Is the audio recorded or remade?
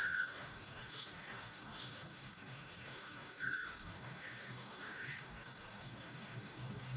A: remade